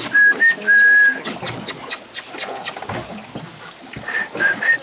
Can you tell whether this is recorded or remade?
recorded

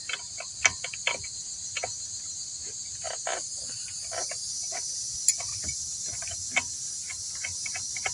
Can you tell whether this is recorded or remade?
recorded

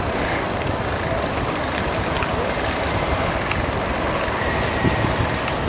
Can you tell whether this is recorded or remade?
recorded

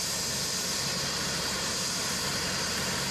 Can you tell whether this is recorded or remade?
remade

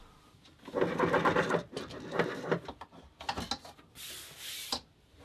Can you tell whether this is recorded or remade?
recorded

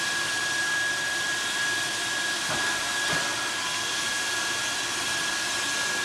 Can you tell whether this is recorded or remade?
recorded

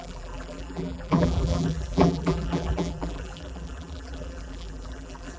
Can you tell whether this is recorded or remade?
remade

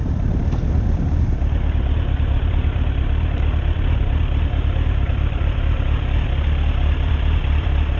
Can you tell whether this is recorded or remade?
remade